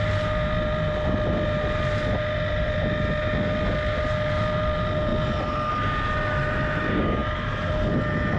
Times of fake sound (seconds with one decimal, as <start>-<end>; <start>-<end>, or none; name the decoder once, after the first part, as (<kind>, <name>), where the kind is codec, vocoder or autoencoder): none